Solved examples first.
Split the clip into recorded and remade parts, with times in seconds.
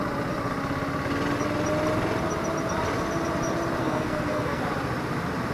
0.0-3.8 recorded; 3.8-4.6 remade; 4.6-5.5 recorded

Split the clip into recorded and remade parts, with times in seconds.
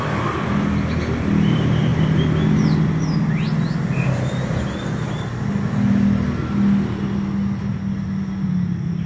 0.0-9.1 recorded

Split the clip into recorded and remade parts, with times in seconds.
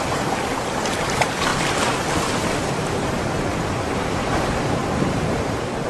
0.0-1.5 remade; 1.5-2.7 recorded; 2.7-5.9 remade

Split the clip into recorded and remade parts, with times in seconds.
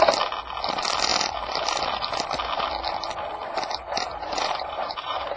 0.0-3.8 recorded; 3.8-5.4 remade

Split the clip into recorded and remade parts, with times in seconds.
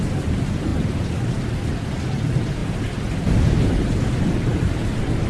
0.0-5.3 recorded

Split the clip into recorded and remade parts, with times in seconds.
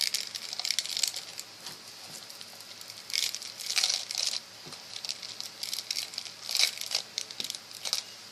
0.0-8.3 recorded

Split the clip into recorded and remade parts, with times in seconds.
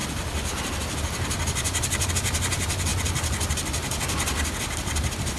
0.0-5.4 recorded